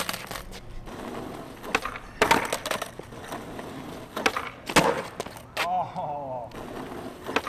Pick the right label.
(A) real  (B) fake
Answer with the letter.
A